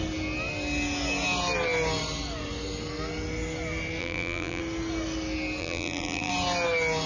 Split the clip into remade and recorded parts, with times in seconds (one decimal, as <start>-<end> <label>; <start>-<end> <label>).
0.0-4.0 recorded; 4.0-4.6 remade; 4.6-5.6 recorded; 5.6-6.3 remade; 6.3-7.1 recorded